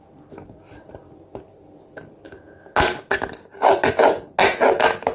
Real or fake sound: real